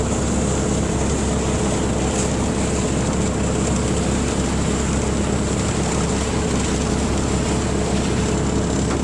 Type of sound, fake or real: real